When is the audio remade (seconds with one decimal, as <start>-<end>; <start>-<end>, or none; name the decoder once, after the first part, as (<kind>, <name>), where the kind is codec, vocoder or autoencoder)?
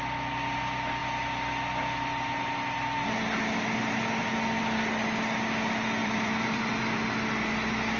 6.0-6.6 (vocoder, BigVGAN v2)